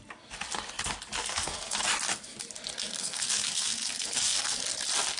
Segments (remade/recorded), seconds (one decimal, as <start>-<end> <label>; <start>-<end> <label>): 0.0-1.2 recorded; 1.2-1.8 remade; 1.8-3.0 recorded; 3.0-4.6 remade; 4.6-5.2 recorded